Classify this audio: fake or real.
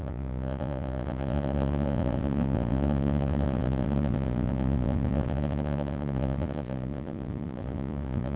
fake